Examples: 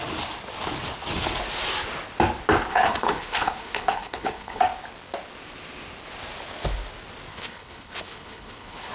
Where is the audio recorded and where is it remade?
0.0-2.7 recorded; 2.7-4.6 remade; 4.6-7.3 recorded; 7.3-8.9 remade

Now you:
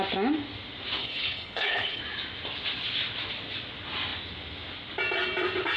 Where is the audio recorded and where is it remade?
0.0-1.0 recorded; 1.0-2.0 remade; 2.0-5.8 recorded